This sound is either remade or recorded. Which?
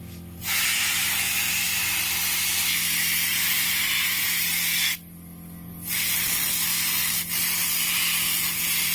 recorded